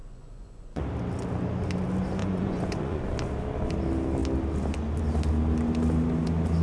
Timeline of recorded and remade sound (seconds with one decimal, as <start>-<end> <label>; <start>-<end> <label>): 0.0-0.8 remade; 0.8-2.2 recorded; 2.2-3.0 remade; 3.0-6.6 recorded